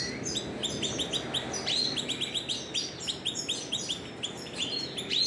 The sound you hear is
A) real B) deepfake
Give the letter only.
A